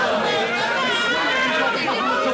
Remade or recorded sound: recorded